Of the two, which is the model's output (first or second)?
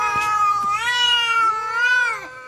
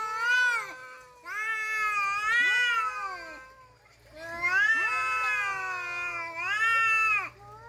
first